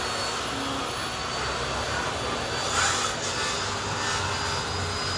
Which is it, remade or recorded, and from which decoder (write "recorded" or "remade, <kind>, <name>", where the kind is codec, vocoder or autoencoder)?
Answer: recorded